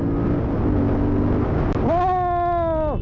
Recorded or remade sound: recorded